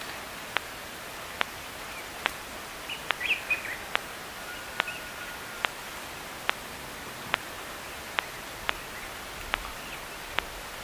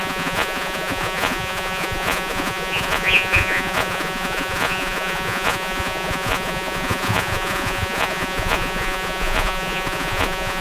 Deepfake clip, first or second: second